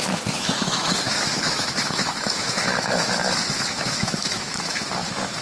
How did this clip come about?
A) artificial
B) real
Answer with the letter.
A